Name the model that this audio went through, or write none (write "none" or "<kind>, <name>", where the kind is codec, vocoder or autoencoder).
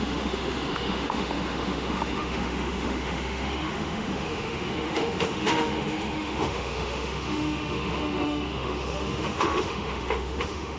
autoencoder, DAC-VAE